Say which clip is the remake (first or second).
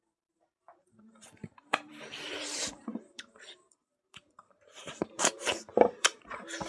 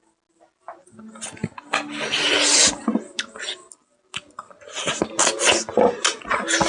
first